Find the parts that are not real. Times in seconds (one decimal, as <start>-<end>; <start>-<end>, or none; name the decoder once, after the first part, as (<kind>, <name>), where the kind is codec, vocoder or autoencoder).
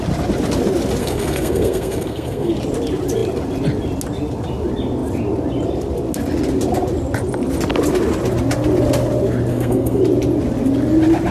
1.0-2.5 (codec, SNAC); 9.5-10.0